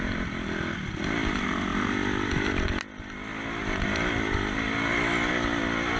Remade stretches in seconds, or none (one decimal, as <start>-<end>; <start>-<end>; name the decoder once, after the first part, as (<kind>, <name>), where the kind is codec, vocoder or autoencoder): none